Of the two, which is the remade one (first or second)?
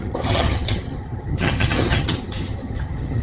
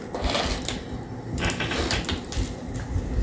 first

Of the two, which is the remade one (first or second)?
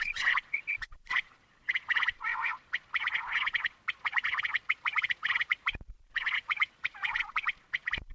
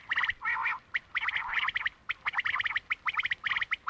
first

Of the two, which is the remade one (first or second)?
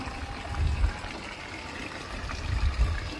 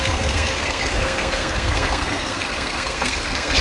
second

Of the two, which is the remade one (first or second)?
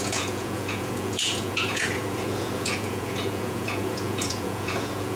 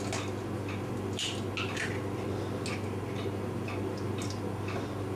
first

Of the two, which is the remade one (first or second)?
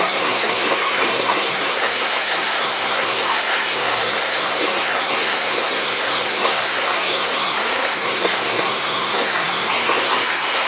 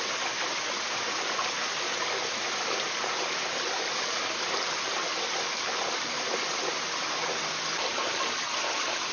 first